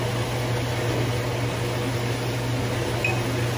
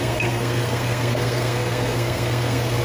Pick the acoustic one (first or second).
first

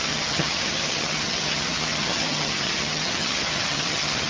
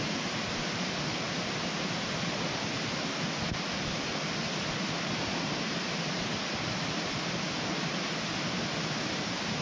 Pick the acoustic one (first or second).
second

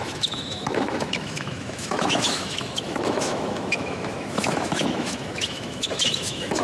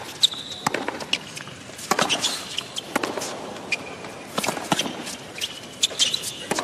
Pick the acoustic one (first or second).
second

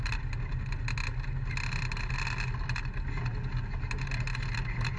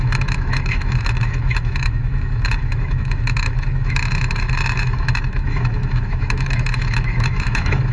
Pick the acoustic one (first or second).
first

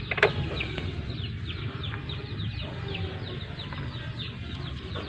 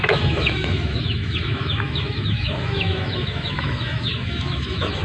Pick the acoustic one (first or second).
first